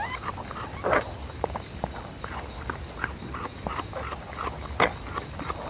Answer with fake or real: real